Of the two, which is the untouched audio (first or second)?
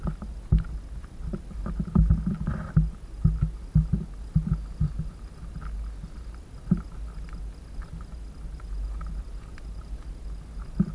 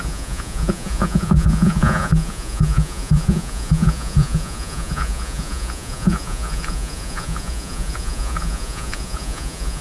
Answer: first